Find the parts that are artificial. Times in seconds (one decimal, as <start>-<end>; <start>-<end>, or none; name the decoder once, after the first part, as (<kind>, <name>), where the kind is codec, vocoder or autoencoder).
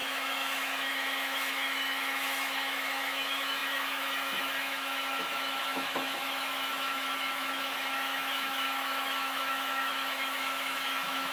0.0-11.3 (autoencoder, DAC-VAE)